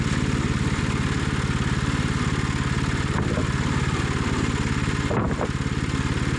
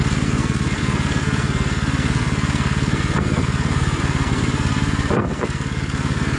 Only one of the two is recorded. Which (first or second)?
first